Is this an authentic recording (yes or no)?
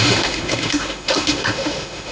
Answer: no